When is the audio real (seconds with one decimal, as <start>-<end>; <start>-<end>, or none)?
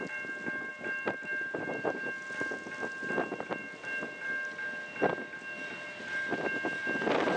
0.0-7.4